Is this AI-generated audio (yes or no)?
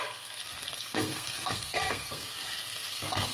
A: yes